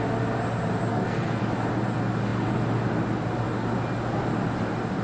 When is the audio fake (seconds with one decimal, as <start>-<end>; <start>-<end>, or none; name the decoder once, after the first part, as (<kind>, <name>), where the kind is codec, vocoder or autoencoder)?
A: 0.9-1.4 (codec, SNAC)

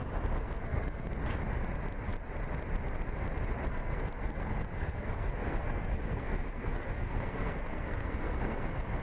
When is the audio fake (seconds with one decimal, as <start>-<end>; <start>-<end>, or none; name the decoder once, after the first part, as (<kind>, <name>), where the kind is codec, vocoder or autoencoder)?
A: 0.4-1.1 (codec, SNAC); 3.7-9.0

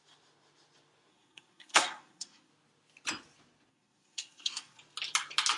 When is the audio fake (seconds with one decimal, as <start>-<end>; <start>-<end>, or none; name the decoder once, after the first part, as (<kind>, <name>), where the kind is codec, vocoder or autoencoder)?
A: 1.1-2.5 (codec, SNAC); 3.7-4.8

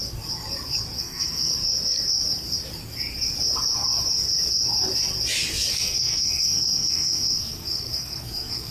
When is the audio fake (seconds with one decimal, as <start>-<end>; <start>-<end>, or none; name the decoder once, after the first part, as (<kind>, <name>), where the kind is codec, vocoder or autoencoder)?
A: 1.0-1.5 (codec, SNAC); 5.7-8.7